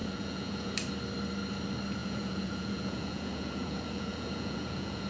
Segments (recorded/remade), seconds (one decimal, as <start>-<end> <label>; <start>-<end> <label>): 0.0-0.7 remade; 0.7-2.0 recorded; 2.0-5.1 remade